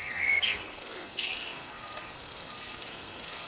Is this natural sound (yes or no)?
no